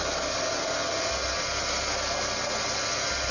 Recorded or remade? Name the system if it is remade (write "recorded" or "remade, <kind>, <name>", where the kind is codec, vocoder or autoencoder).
recorded